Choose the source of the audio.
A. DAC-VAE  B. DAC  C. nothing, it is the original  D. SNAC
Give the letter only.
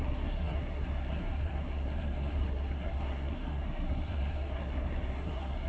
D